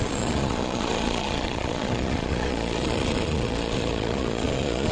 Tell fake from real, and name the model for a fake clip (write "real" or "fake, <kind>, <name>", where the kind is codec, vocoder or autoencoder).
fake, vocoder, Vocos